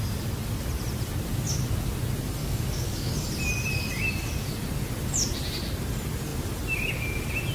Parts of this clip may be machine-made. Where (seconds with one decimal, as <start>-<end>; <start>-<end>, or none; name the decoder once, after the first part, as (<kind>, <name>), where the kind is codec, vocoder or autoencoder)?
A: 2.4-3.1 (codec, DAC)